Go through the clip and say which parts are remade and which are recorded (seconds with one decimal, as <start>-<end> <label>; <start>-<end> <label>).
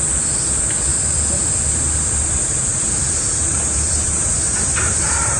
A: 0.0-2.7 recorded; 2.7-5.4 remade